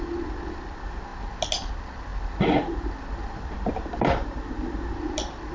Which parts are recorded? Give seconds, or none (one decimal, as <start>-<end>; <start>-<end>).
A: 0.0-5.5